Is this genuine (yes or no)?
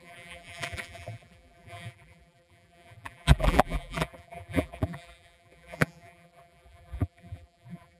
no